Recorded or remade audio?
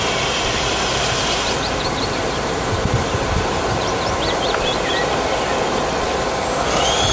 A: remade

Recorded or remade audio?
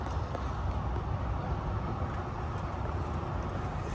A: recorded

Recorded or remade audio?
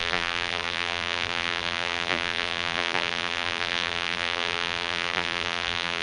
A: remade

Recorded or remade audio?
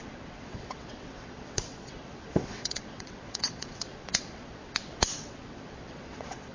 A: remade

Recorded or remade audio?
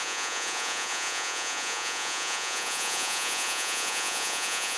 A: remade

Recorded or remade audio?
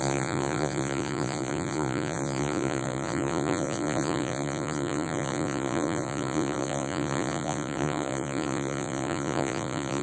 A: remade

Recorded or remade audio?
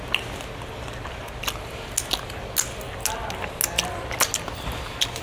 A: recorded